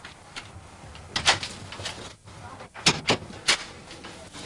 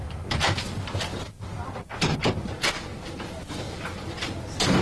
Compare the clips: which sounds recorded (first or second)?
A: first